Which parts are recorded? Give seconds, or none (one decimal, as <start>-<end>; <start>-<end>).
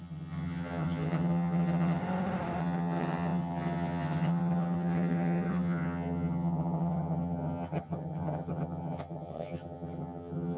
2.0-2.6